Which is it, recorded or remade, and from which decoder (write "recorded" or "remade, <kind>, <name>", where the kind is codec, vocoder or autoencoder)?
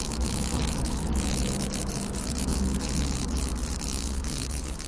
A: remade, autoencoder, DAC-VAE